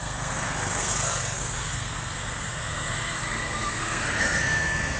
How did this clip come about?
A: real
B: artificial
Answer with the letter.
B